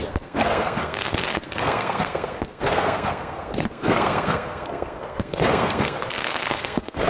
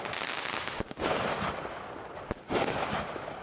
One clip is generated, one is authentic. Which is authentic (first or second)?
second